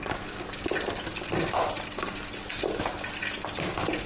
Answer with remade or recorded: recorded